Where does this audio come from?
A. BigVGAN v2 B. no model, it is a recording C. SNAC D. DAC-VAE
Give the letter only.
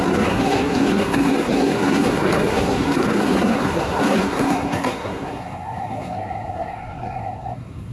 C